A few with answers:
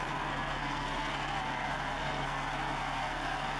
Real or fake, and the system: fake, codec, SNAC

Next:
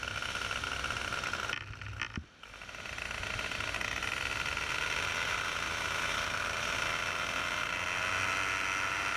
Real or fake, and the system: real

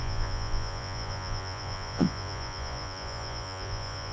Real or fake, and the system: fake, vocoder, Vocos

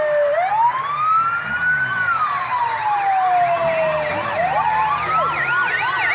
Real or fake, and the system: real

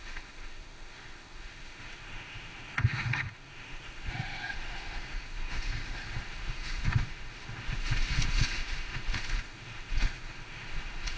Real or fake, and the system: fake, autoencoder, DAC-VAE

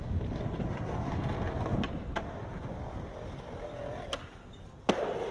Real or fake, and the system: real